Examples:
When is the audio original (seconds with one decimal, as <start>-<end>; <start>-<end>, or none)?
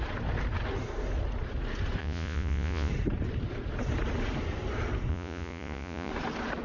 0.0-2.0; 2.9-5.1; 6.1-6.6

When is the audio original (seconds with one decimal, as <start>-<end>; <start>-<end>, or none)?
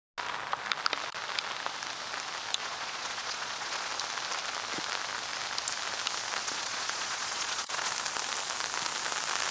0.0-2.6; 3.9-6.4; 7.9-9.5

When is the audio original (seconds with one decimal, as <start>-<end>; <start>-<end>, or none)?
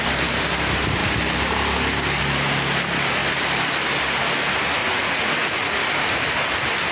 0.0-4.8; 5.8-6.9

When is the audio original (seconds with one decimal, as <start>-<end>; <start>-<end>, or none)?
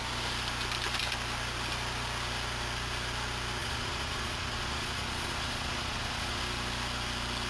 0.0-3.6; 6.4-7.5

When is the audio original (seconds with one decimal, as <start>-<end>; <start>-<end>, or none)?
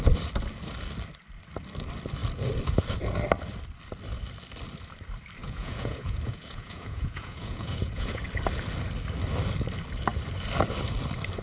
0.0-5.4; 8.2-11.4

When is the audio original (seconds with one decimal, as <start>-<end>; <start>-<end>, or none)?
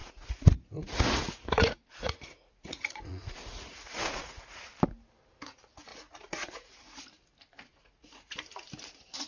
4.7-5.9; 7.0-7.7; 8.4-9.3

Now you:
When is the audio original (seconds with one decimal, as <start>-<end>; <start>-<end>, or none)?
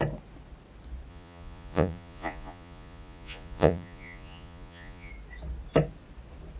0.0-1.1; 5.1-6.6